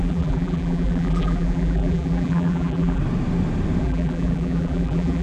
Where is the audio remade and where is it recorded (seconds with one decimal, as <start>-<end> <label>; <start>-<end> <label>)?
0.0-3.0 remade; 3.0-3.8 recorded; 3.8-5.2 remade